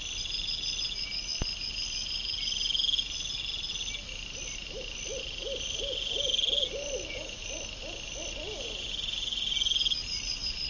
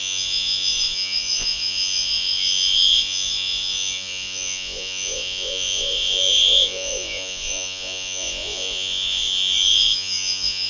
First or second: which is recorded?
first